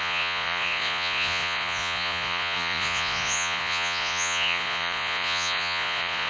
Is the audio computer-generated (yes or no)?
yes